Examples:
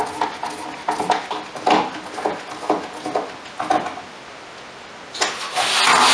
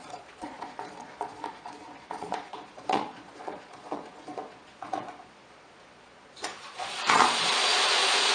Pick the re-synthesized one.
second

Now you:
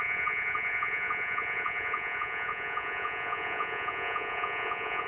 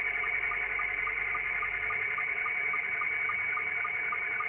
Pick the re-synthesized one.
first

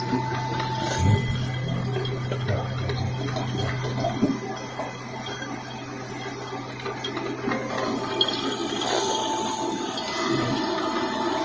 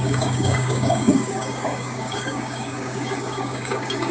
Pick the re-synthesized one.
second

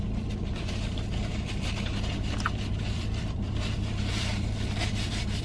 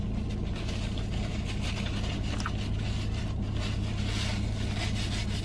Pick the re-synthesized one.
first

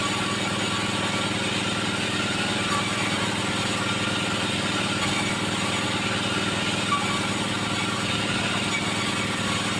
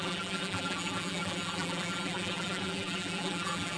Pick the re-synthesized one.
second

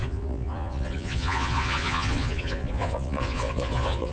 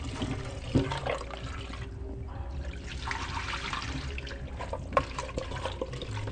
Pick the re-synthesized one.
first